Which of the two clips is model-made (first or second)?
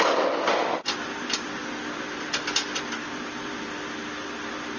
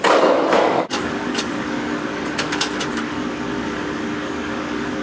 second